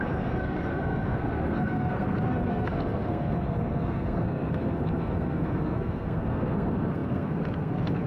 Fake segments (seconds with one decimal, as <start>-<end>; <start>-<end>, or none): 0.0-8.1

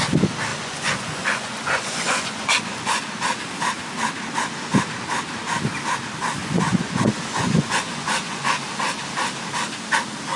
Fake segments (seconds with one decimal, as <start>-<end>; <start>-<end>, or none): 0.5-3.0; 6.4-8.6